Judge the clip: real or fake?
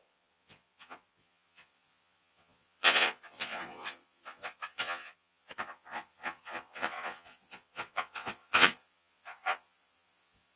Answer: fake